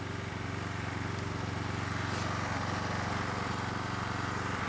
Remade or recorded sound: recorded